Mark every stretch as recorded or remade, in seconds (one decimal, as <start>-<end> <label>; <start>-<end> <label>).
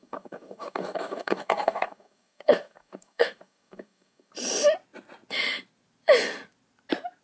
0.0-4.3 remade; 4.3-7.2 recorded